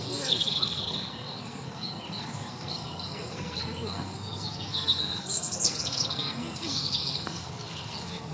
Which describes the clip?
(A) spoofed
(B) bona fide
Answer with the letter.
A